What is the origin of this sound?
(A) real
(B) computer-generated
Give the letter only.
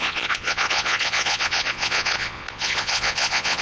B